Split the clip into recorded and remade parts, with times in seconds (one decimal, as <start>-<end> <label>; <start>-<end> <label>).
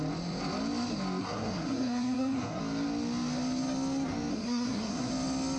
0.0-1.2 recorded; 1.2-2.6 remade; 2.6-4.3 recorded; 4.3-5.1 remade; 5.1-5.6 recorded